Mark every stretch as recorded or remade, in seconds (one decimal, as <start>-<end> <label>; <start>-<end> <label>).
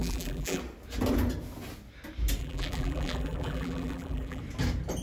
0.0-0.6 remade; 0.6-2.4 recorded; 2.4-4.4 remade; 4.4-5.0 recorded